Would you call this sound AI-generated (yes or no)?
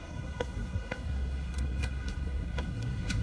yes